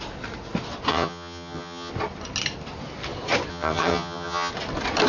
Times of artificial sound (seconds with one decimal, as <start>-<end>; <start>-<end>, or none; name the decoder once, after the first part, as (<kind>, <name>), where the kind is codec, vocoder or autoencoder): 0.9-1.9 (vocoder, HiFi-GAN); 3.5-4.5